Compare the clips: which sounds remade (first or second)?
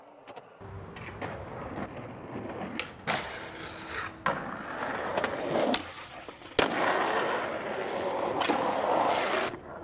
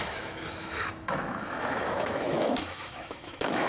second